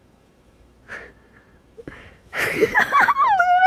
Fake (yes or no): yes